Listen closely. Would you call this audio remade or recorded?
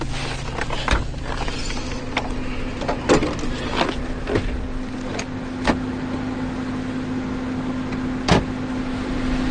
recorded